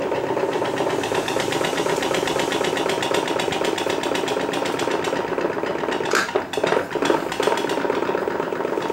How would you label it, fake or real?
real